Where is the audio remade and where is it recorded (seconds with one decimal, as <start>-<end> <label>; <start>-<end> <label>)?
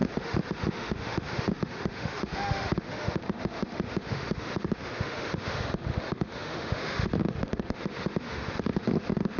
0.0-9.4 remade